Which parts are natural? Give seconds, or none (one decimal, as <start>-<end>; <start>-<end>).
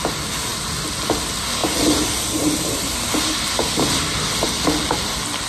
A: 0.0-5.5